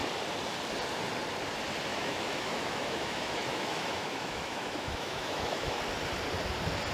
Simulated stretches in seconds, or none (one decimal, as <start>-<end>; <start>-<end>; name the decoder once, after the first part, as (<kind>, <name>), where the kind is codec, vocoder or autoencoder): 1.9-5.8 (autoencoder, DAC-VAE)

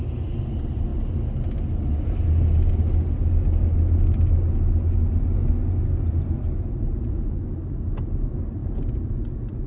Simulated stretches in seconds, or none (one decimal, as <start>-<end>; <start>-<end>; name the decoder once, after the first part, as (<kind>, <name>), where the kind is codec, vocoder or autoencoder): none